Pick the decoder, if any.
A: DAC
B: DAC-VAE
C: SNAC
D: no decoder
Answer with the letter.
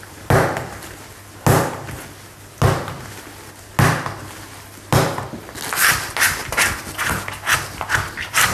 D